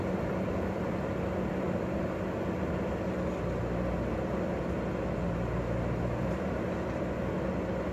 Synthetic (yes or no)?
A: no